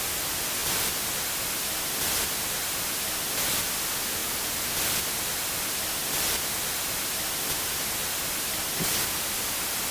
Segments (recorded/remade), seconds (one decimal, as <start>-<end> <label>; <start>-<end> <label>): 0.0-0.6 recorded; 0.6-1.1 remade; 1.1-9.9 recorded